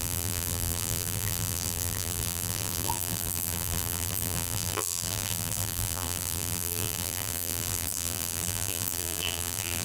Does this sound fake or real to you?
fake